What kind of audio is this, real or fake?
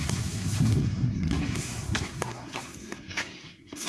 fake